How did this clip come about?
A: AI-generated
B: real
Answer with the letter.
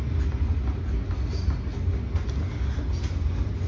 B